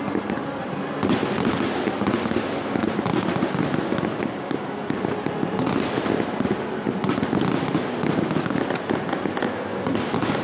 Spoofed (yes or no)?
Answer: no